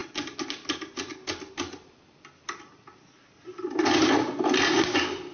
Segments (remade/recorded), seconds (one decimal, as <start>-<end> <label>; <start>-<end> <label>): 0.0-5.3 recorded